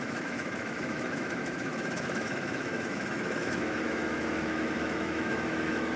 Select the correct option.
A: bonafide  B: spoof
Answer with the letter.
B